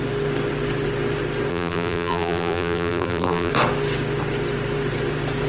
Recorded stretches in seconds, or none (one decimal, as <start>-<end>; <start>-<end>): 0.0-1.5; 3.5-5.5